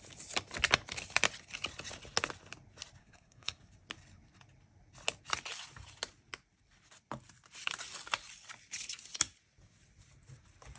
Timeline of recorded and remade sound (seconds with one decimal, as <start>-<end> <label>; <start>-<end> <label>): 0.0-3.0 recorded; 3.0-3.6 remade; 3.6-10.8 recorded